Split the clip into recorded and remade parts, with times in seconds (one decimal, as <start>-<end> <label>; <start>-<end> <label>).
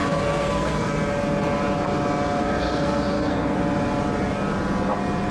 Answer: 0.0-0.9 remade; 0.9-2.4 recorded; 2.4-3.6 remade; 3.6-5.3 recorded